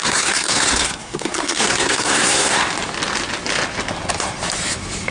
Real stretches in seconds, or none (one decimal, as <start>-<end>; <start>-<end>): 2.6-5.1